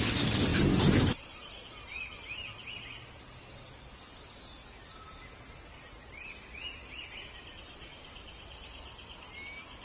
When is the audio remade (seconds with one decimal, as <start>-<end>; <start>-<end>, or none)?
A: none